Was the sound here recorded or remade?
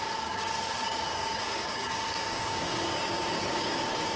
remade